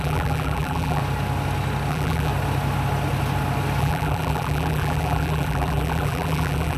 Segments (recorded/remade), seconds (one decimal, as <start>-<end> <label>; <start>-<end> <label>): 0.0-1.0 remade; 1.0-1.9 recorded; 1.9-2.3 remade; 2.3-3.8 recorded; 3.8-6.8 remade